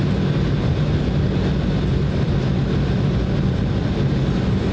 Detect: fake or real real